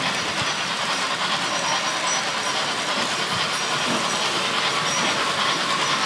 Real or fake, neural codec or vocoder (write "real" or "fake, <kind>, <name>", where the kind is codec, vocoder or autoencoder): real